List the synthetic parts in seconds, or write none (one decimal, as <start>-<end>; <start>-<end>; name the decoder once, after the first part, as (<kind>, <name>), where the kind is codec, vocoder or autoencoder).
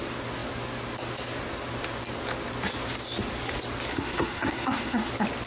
3.9-5.1 (codec, SNAC)